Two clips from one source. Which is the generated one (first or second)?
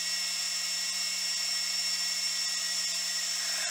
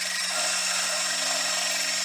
first